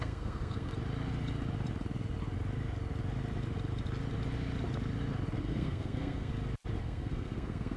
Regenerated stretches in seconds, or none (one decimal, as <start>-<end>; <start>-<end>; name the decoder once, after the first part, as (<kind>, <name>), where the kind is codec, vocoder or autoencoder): 0.0-0.7 (codec, SNAC); 5.4-6.3; 6.8-7.8